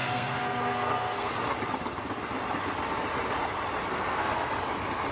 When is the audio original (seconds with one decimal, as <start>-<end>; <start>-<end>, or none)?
1.3-3.9; 4.5-5.1